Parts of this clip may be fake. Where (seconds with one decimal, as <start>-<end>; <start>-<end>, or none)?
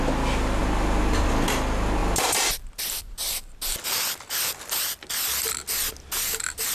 none